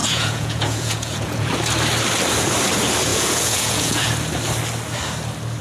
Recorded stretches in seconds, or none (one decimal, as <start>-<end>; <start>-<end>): 1.5-3.1; 4.1-5.6